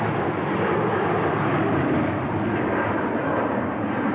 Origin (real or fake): real